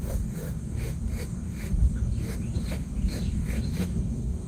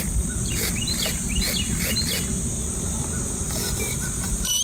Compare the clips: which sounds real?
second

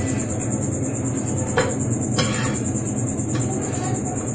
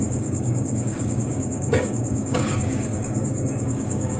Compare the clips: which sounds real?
first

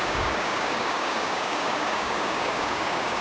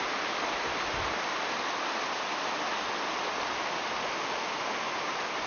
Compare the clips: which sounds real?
second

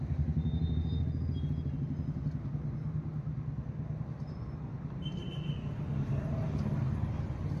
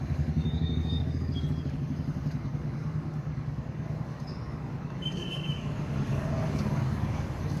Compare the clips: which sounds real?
first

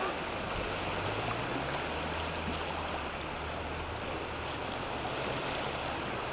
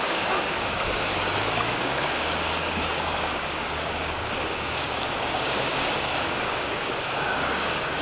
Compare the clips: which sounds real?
first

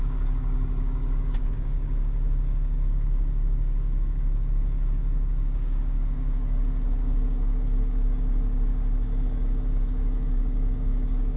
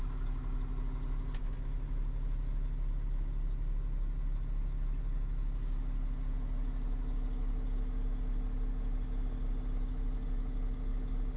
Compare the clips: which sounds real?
second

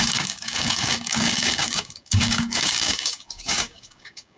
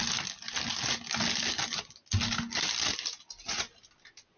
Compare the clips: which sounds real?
second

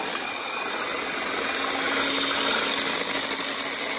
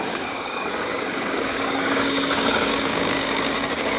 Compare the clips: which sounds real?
first